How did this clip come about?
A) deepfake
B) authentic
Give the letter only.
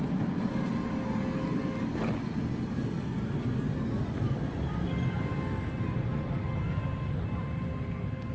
B